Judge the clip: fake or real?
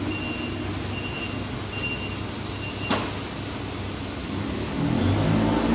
real